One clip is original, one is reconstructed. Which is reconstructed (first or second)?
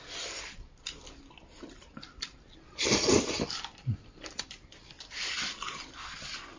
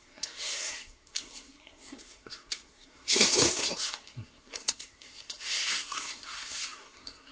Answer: second